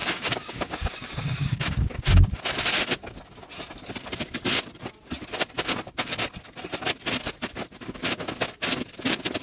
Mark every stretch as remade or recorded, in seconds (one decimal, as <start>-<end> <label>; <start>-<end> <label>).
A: 0.0-2.4 remade; 2.4-9.4 recorded